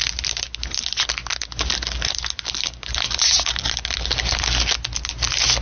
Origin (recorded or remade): recorded